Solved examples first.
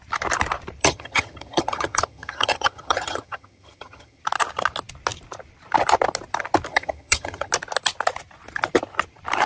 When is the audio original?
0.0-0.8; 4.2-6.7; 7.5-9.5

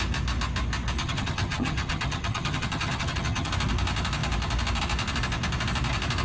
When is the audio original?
0.0-1.0; 3.5-6.2

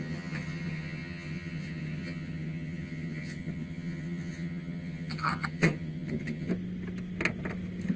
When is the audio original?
6.5-8.0

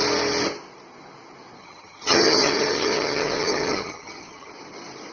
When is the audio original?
0.0-1.6; 4.5-5.1